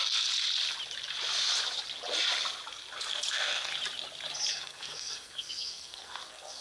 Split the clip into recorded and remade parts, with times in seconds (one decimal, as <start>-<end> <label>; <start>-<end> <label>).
0.0-3.3 recorded; 3.3-3.7 remade; 3.7-4.5 recorded; 4.5-6.6 remade